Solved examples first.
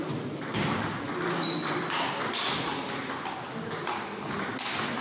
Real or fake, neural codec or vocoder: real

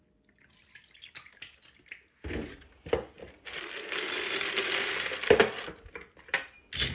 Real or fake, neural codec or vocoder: real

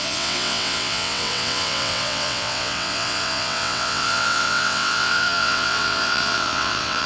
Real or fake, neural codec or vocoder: fake, vocoder, WaveNeXt